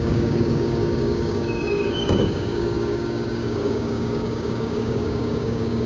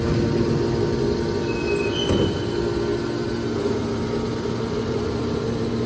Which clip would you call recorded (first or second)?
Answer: second